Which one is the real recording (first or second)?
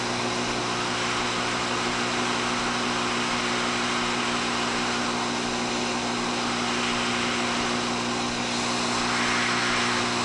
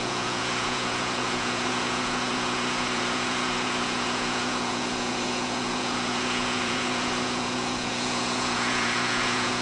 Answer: first